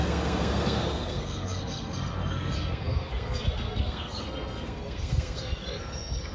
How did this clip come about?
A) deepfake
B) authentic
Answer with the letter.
A